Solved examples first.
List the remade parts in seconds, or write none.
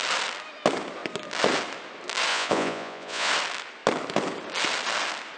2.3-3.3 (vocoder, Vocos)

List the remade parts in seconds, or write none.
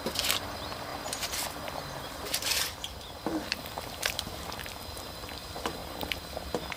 0.9-4.7 (vocoder, BigVGAN v2)